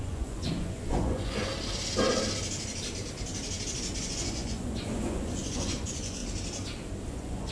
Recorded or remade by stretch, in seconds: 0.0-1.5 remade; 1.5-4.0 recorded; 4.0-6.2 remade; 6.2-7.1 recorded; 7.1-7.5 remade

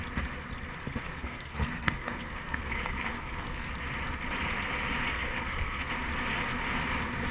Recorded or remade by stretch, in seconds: 0.0-0.8 recorded; 0.8-3.7 remade; 3.7-5.1 recorded; 5.1-5.9 remade; 5.9-7.3 recorded